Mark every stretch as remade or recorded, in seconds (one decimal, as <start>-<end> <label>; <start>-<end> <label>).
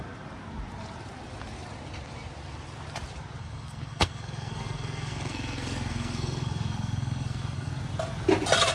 0.0-3.4 recorded; 3.4-7.8 remade; 7.8-8.7 recorded